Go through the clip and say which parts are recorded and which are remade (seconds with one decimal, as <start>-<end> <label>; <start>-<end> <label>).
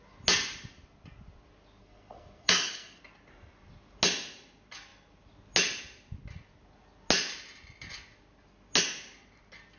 0.0-1.8 recorded; 1.8-3.0 remade; 3.0-9.8 recorded